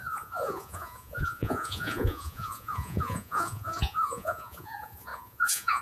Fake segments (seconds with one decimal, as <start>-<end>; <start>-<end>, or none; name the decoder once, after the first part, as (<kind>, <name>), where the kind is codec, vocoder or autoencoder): 0.0-5.8 (vocoder, Vocos)